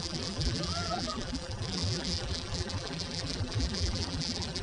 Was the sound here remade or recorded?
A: remade